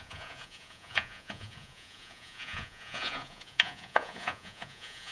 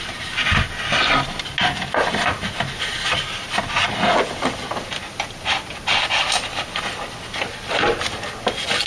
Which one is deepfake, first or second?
first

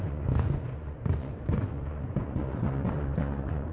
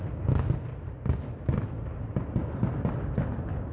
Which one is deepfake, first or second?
first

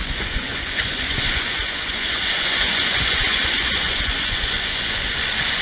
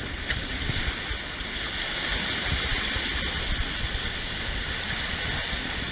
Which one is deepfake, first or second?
first